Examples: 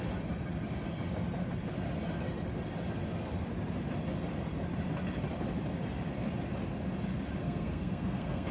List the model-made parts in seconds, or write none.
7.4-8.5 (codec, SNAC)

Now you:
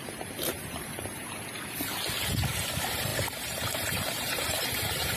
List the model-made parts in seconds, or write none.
0.0-1.2 (vocoder, BigVGAN v2); 2.7-5.2